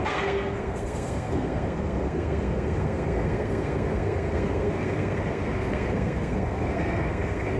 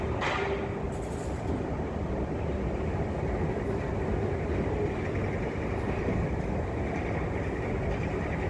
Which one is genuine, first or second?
second